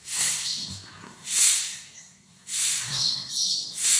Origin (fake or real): fake